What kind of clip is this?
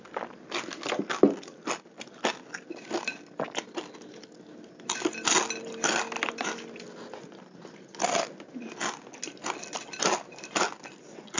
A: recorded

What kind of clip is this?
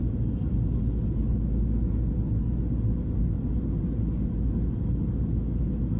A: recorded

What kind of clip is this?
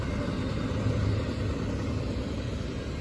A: recorded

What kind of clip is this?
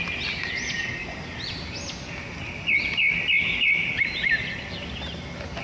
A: recorded